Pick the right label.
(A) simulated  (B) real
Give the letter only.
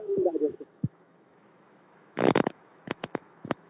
A